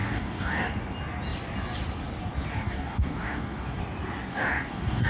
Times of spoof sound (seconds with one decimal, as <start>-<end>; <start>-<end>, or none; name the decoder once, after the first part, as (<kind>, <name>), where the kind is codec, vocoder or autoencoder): 0.0-0.7 (codec, DAC); 2.5-3.8; 4.3-5.1